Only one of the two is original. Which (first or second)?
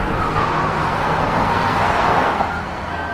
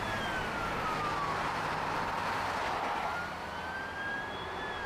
second